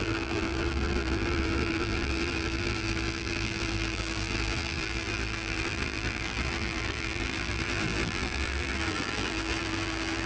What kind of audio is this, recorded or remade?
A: remade